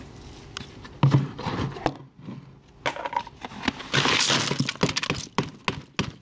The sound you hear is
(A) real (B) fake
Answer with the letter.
A